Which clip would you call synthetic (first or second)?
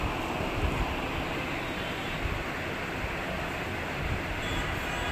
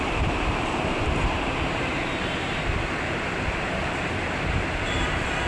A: second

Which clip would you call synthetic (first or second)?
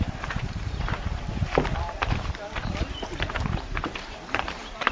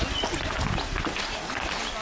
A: first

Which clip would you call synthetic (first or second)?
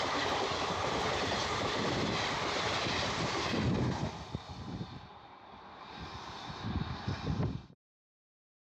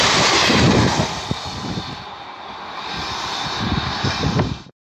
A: first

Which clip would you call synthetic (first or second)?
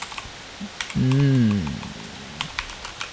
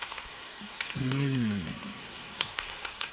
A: second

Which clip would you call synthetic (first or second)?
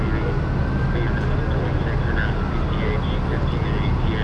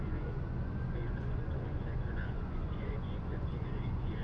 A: second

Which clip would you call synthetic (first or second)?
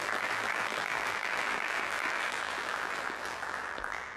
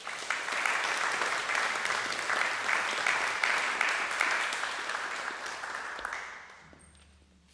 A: first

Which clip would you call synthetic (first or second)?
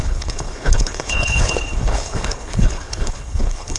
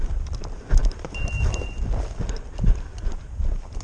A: first